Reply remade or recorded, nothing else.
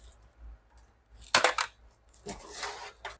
recorded